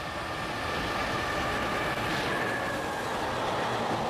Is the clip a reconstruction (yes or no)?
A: no